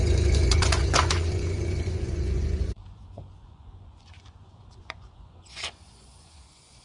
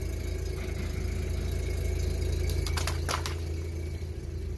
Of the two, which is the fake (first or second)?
first